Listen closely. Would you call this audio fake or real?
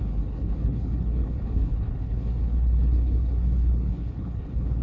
fake